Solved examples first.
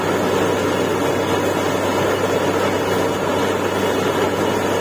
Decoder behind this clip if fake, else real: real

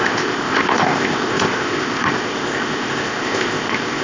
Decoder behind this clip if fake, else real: fake, codec, ZipCodec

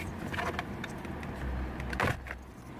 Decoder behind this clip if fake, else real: real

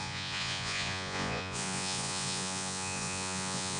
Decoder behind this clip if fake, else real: fake, vocoder, Vocos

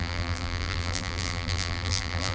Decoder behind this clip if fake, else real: fake, vocoder, BigVGAN v2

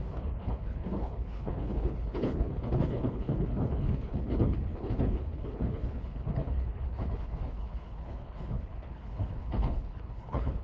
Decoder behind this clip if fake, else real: fake, codec, HILCodec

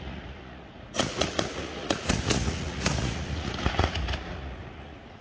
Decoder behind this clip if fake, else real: fake, vocoder, Vocos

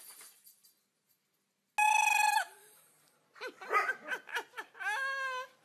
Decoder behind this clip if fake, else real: real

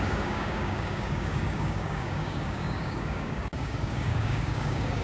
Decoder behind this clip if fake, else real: fake, codec, DAC